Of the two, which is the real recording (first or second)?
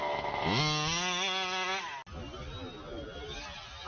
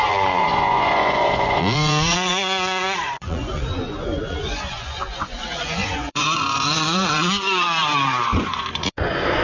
first